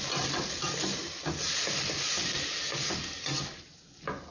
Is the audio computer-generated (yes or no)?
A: no